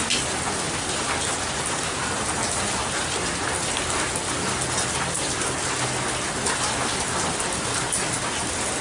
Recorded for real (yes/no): yes